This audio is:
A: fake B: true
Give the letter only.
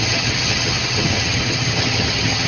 A